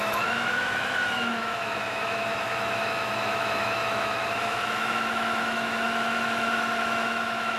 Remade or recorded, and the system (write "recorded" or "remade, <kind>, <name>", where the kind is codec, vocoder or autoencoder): remade, autoencoder, DAC-VAE